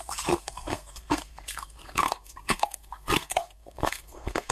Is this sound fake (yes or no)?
yes